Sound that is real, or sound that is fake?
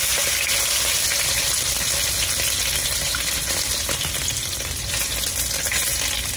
real